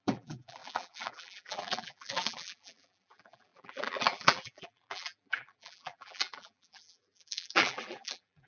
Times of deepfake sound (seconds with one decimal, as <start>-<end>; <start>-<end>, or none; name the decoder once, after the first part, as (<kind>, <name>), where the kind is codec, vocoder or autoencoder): 0.0-8.5 (vocoder, BigVGAN v2)